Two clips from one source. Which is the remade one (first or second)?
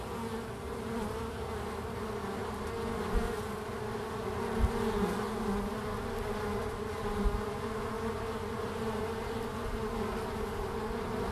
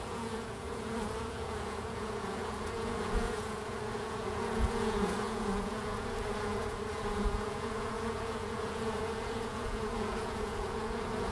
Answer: second